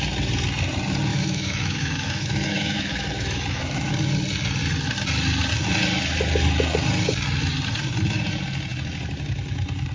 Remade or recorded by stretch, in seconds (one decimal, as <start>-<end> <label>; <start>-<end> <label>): 0.0-1.1 recorded; 1.1-3.9 remade; 3.9-9.9 recorded